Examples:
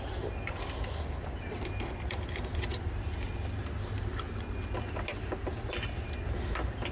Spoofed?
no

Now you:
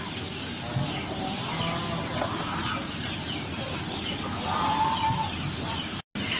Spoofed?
no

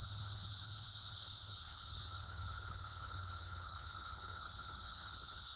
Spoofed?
yes